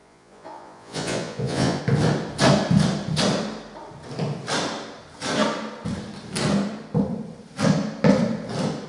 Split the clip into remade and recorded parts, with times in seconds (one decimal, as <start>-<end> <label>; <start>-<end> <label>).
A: 0.0-1.8 remade; 1.8-8.9 recorded